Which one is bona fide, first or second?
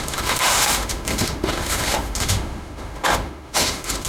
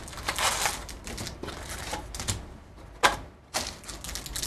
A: second